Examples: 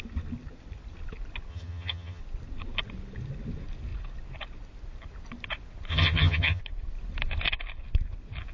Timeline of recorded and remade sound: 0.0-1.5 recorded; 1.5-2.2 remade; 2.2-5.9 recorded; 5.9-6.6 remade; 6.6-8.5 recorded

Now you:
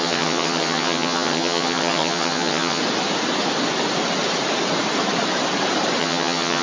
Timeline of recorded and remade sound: 0.0-2.8 remade; 2.8-6.0 recorded; 6.0-6.6 remade

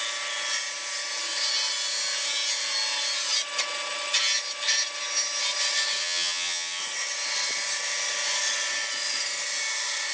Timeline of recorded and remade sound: 0.0-6.0 recorded; 6.0-6.8 remade; 6.8-10.1 recorded